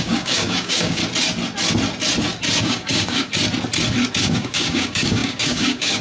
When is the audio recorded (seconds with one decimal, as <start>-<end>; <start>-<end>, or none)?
1.0-2.6; 3.3-4.2